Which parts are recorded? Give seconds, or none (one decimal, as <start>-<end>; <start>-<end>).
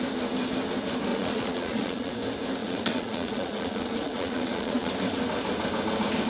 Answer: 0.0-1.1; 2.1-2.6; 4.9-6.3